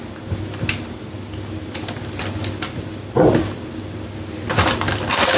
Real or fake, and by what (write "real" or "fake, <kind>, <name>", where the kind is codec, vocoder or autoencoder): real